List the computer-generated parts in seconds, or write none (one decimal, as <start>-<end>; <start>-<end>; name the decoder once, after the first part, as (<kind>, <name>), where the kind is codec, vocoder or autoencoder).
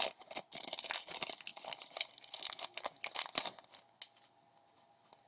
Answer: none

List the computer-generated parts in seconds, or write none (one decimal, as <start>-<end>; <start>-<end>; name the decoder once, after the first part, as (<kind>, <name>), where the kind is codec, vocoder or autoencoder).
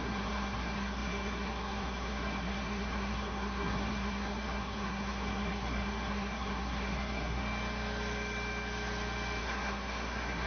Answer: 0.0-7.4 (codec, SNAC); 9.4-10.5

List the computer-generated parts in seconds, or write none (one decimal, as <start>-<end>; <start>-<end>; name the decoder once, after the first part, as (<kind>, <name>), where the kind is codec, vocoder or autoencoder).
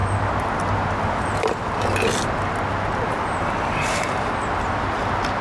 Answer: none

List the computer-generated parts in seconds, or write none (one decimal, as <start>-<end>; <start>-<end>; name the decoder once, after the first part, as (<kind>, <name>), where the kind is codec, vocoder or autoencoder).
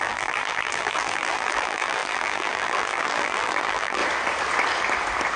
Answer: 0.0-4.0 (vocoder, BigVGAN v2)